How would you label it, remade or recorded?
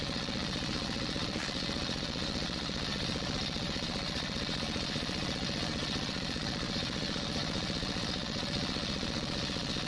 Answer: remade